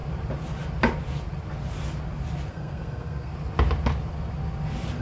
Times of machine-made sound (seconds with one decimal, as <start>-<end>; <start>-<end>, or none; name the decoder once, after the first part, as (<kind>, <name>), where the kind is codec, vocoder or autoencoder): 2.5-3.3 (codec, SNAC)